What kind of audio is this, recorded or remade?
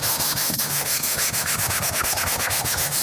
remade